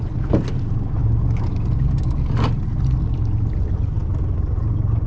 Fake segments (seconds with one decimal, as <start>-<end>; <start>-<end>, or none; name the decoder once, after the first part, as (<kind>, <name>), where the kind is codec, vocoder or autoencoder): none